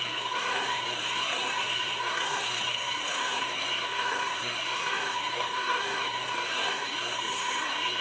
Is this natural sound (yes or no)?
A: no